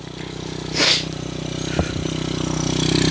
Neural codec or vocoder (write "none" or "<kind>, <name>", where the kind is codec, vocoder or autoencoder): none